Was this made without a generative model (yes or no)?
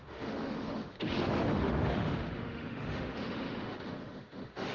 no